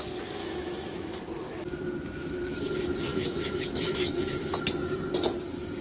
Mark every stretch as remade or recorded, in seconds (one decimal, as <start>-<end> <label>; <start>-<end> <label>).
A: 0.0-0.4 recorded; 0.4-1.2 remade; 1.2-3.1 recorded; 3.1-4.6 remade; 4.6-5.8 recorded